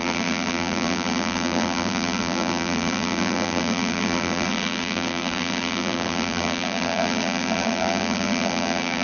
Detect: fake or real fake